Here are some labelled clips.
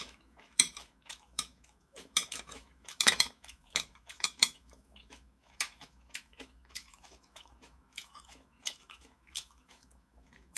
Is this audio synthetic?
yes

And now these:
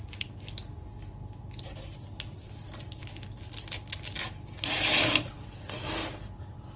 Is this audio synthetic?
no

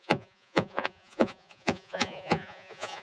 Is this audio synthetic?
yes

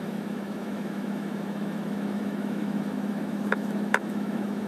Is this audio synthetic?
yes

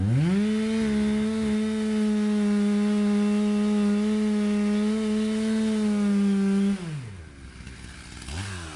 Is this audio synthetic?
no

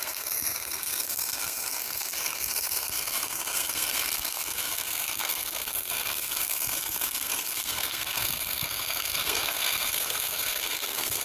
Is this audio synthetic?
yes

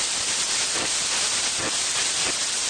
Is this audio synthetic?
no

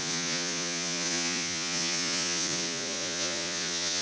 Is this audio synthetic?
yes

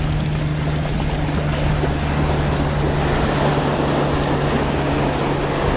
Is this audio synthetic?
no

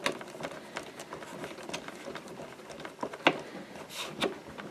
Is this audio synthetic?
no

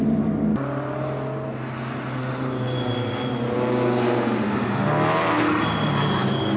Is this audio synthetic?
no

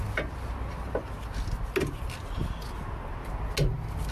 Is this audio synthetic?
no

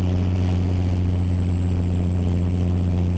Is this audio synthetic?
no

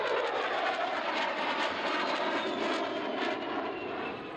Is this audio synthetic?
no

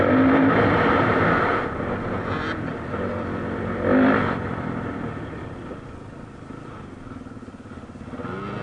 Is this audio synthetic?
no